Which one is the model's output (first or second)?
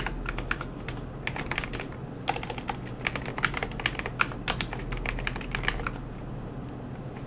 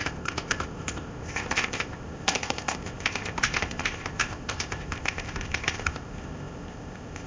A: second